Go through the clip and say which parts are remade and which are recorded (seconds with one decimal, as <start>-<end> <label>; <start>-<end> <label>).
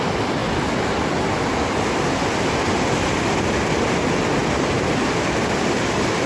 0.0-6.3 recorded